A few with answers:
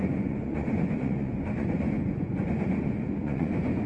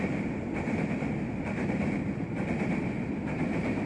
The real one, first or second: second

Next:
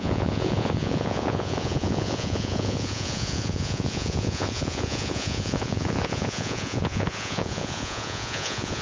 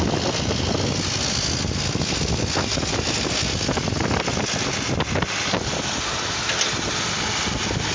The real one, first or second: second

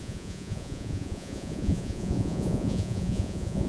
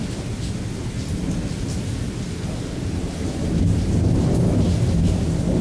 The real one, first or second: second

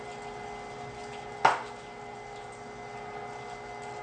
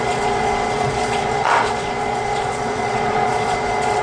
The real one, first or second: first